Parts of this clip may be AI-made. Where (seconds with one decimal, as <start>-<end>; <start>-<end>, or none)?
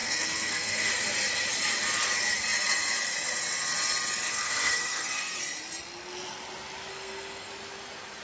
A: 0.0-0.9; 4.3-5.4; 6.9-7.5